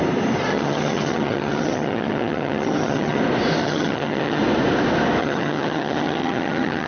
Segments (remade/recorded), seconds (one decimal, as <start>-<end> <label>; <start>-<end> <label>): 0.0-0.5 recorded; 0.5-3.2 remade; 3.2-3.6 recorded; 3.6-4.4 remade; 4.4-5.2 recorded; 5.2-6.9 remade